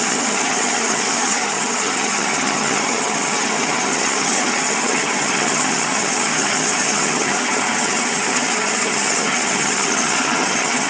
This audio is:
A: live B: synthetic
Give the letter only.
B